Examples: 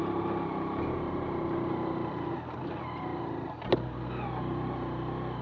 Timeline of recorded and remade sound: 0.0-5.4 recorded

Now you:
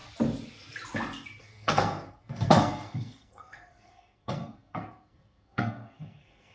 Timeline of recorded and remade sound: 0.0-1.4 recorded; 1.4-6.5 remade

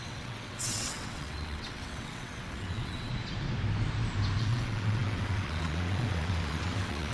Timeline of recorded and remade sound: 0.0-3.1 remade; 3.1-4.4 recorded; 4.4-7.1 remade

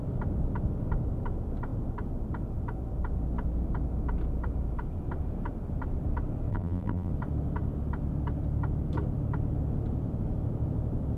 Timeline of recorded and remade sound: 0.0-6.5 recorded; 6.5-7.1 remade; 7.1-11.2 recorded

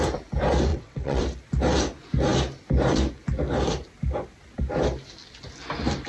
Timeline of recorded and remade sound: 0.0-0.7 recorded; 0.7-1.2 remade; 1.2-6.1 recorded

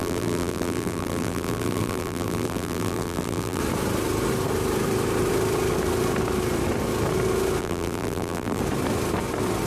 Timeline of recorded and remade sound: 0.0-3.6 remade; 3.6-7.6 recorded; 7.6-8.6 remade; 8.6-9.7 recorded

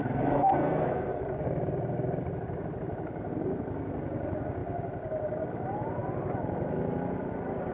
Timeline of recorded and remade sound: 0.0-1.2 remade; 1.2-7.7 recorded